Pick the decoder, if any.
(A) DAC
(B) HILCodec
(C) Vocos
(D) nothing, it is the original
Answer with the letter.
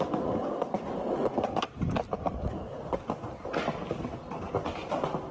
D